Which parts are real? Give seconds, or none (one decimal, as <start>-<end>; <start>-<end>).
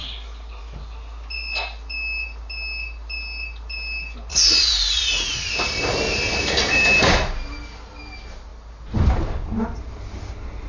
0.0-4.3; 5.3-10.7